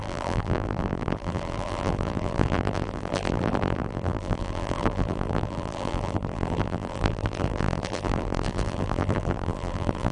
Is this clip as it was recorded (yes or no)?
no